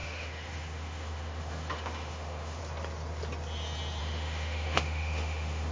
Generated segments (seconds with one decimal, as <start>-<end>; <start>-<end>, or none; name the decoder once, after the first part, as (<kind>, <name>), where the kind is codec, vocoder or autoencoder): 0.0-2.6 (autoencoder, DAC-VAE); 4.0-5.7